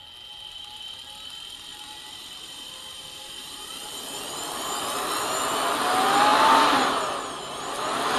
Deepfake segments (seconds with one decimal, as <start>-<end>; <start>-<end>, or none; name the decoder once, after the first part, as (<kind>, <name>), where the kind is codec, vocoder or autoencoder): 1.7-3.7 (vocoder, BigVGAN v2)